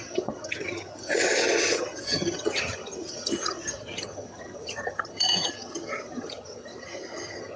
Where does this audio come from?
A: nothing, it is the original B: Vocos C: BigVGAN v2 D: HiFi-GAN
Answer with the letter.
D